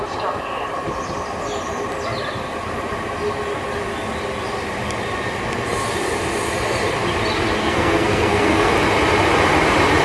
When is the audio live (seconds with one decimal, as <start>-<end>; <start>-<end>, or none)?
0.0-7.6; 8.7-10.0